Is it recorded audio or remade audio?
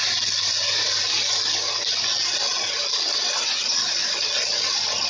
recorded